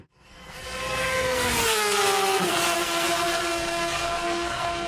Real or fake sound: fake